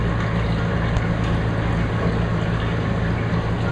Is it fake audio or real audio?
real